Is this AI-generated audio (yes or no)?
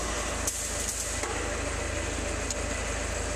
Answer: no